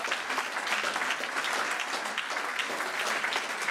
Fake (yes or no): no